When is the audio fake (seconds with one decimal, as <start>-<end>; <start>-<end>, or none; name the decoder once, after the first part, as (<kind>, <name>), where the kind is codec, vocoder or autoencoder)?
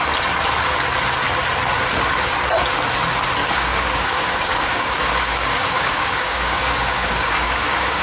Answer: 3.4-8.0 (codec, DAC)